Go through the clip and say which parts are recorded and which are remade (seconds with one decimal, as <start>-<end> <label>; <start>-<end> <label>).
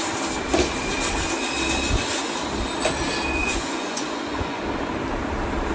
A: 0.0-3.4 recorded; 3.4-4.6 remade; 4.6-5.7 recorded